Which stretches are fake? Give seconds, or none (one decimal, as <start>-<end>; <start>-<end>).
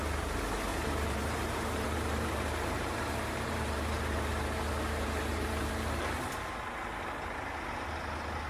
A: 0.7-5.7